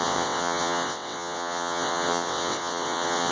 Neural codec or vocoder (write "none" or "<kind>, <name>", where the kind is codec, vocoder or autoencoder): vocoder, WaveNeXt